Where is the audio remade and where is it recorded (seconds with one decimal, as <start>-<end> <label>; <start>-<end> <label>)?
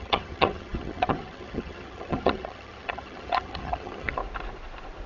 0.0-4.2 remade; 4.2-5.1 recorded